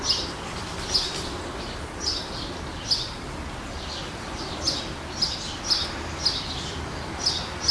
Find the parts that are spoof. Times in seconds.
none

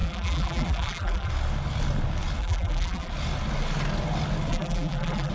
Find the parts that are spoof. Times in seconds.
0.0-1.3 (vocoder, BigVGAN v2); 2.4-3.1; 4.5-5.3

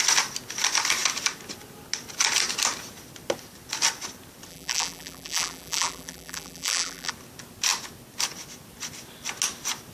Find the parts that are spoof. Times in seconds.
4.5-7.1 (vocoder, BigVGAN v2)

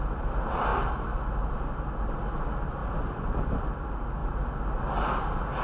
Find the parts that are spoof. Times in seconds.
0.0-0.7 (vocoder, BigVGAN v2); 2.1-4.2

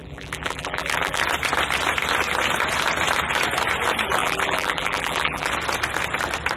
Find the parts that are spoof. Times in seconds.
0.0-1.2 (vocoder, BigVGAN v2); 4.2-5.5

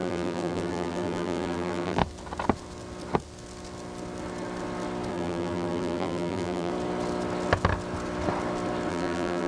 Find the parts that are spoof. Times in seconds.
0.0-2.0 (vocoder, BigVGAN v2); 5.1-6.7; 8.9-9.5

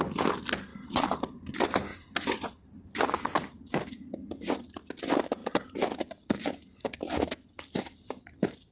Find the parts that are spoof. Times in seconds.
0.7-1.4 (vocoder, BigVGAN v2); 1.9-5.0; 5.4-7.8

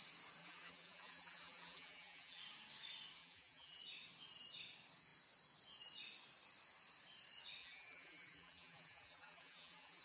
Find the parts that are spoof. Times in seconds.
0.4-2.4 (vocoder, BigVGAN v2); 3.2-3.8; 7.6-10.0